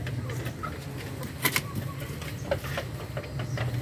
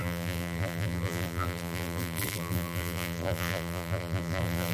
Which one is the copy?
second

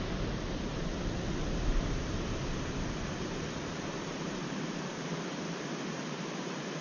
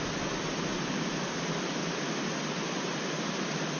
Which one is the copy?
first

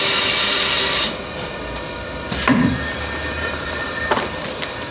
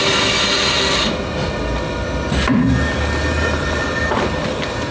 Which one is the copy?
first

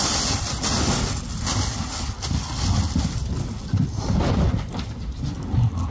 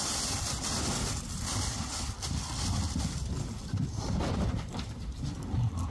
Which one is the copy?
second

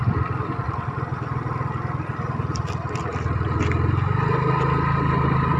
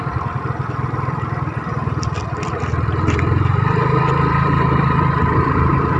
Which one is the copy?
second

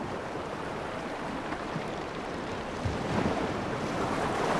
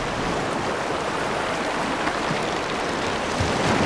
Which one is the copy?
first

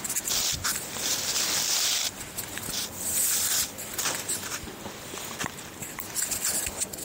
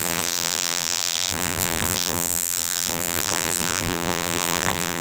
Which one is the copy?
second